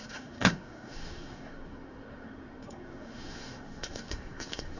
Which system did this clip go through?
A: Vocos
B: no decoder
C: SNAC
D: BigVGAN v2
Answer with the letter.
C